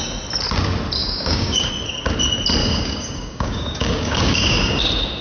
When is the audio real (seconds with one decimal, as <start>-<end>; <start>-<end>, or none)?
0.0-1.0; 1.7-2.6; 4.8-5.2